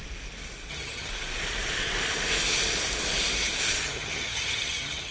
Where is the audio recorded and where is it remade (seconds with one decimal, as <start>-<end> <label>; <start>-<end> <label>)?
0.0-0.7 recorded; 0.7-1.1 remade; 1.1-3.8 recorded; 3.8-5.1 remade